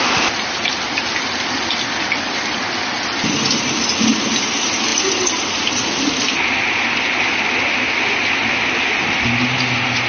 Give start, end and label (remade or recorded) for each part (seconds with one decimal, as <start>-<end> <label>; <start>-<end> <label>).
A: 0.0-10.1 recorded